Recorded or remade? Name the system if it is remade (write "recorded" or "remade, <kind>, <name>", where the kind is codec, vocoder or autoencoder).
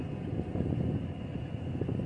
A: recorded